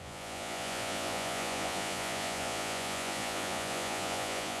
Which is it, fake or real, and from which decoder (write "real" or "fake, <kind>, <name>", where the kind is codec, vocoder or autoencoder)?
fake, vocoder, Vocos